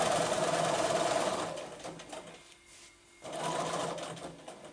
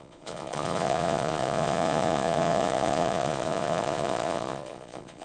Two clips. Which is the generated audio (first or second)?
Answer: second